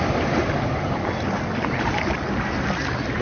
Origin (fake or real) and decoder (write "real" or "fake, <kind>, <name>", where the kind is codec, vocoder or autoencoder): real